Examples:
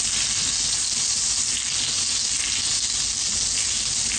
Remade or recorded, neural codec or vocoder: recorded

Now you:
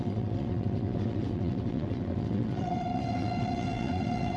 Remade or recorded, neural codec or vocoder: remade, vocoder, WaveNeXt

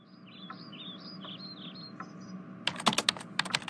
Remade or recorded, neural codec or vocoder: recorded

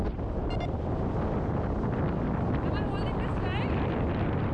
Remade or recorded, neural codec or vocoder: recorded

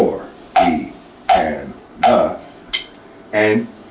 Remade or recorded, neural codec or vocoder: recorded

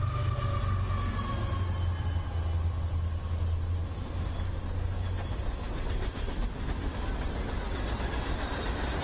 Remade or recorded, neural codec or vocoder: recorded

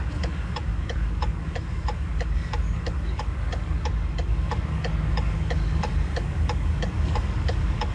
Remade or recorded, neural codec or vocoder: remade, codec, DAC